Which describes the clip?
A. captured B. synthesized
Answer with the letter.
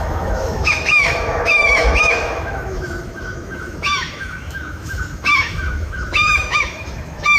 B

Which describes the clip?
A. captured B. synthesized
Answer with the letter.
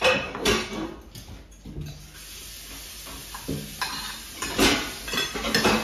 A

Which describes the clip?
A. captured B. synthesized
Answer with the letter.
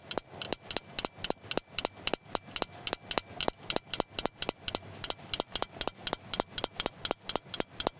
A